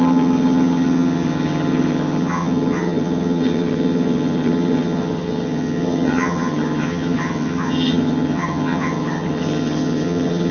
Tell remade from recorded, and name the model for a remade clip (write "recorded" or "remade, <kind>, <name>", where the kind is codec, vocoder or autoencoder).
remade, vocoder, HiFi-GAN